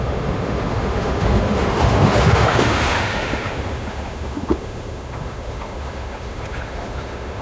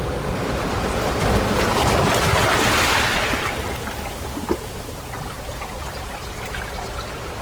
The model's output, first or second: first